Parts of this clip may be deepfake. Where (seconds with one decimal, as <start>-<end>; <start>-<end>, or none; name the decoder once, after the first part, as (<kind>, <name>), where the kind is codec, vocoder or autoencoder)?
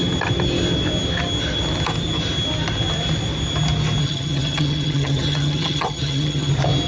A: 4.0-6.5 (vocoder, HiFi-GAN)